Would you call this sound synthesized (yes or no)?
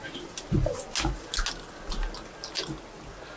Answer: no